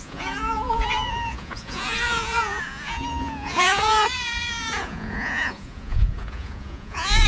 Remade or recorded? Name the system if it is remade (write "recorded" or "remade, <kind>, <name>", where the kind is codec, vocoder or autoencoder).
remade, vocoder, Vocos